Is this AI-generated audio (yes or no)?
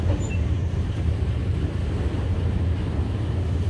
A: no